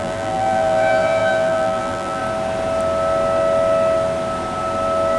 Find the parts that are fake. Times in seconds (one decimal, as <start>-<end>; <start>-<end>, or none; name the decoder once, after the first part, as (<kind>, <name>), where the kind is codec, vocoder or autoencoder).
0.0-2.2 (vocoder, BigVGAN v2)